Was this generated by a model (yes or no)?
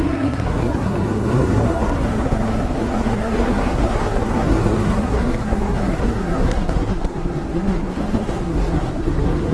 yes